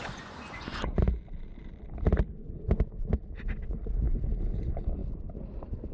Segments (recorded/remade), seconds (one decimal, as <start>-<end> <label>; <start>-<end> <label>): 0.0-1.1 remade; 1.1-4.6 recorded; 4.6-5.0 remade; 5.0-5.9 recorded